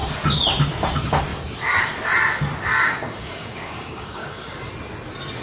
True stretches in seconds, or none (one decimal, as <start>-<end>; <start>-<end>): 0.0-2.7; 4.7-5.4